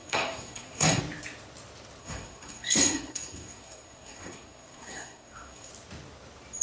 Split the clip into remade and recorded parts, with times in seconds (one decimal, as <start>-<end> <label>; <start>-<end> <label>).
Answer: 0.0-1.0 remade; 1.0-2.0 recorded; 2.0-5.7 remade; 5.7-6.6 recorded